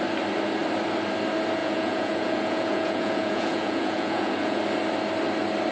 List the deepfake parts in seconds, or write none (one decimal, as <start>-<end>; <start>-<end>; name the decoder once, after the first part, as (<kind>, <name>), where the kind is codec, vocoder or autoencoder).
1.6-4.6 (vocoder, Vocos)

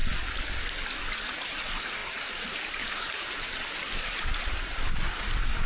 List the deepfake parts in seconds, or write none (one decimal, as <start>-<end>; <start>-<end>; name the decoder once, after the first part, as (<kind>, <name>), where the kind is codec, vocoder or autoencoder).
1.1-5.7 (vocoder, BigVGAN v2)

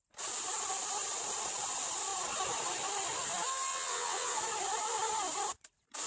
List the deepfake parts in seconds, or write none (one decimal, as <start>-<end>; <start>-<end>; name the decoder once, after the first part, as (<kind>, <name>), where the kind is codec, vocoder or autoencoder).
3.7-4.4 (vocoder, WaveNeXt)

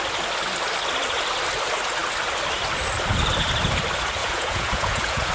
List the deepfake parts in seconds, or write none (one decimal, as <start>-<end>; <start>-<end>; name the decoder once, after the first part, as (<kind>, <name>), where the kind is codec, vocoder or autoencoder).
4.2-5.3 (vocoder, Vocos)

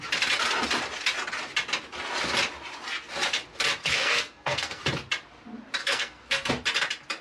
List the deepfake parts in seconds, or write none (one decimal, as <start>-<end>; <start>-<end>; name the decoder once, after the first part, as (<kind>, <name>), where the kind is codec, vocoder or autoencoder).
3.8-4.8 (codec, SNAC); 5.8-6.5

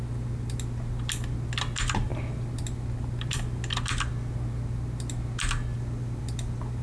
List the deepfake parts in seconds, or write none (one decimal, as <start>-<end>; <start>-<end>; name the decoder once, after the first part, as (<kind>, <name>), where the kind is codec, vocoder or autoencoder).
none